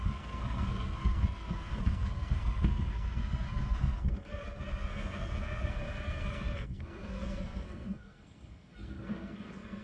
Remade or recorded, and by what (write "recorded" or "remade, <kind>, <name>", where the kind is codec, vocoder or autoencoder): remade, codec, SNAC